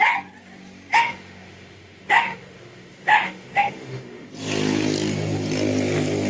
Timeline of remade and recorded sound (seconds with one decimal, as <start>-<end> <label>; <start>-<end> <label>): 0.0-0.9 recorded; 0.9-4.3 remade; 4.3-6.3 recorded